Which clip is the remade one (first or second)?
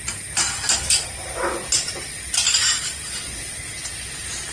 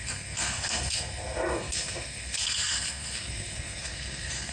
second